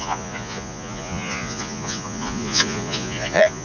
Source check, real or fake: fake